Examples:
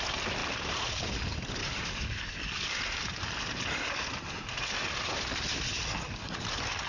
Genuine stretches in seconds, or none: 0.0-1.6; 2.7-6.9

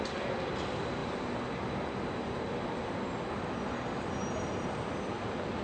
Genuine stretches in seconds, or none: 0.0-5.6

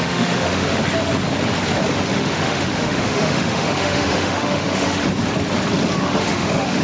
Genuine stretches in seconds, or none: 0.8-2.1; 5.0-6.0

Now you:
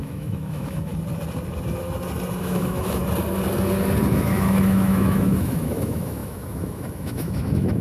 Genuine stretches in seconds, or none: 0.9-2.4; 3.0-4.1

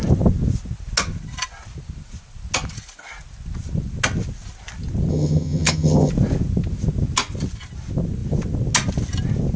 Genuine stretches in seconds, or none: 0.0-5.1; 6.1-9.6

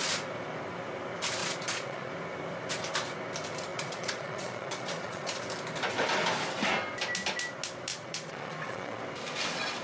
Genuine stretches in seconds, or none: 0.0-1.4; 2.1-3.7; 5.4-7.9; 9.0-9.8

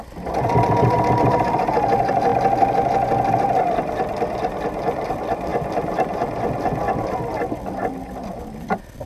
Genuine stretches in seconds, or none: 2.3-3.3; 5.5-8.4

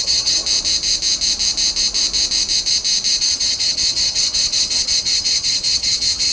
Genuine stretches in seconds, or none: 0.4-3.2